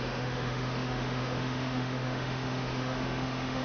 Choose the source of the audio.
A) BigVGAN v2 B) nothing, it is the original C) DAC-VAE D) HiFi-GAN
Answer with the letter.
C